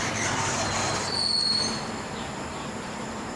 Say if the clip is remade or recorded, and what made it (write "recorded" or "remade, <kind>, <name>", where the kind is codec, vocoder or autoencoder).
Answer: remade, vocoder, BigVGAN v2